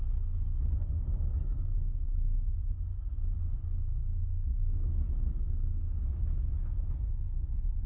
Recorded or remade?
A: recorded